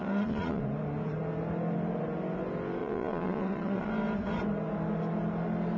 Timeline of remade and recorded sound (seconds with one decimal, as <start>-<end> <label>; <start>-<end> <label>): 0.0-0.6 remade; 0.6-2.8 recorded; 2.8-3.9 remade; 3.9-5.8 recorded